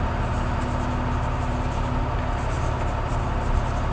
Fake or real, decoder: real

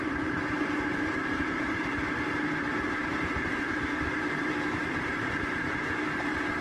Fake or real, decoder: fake, vocoder, BigVGAN v2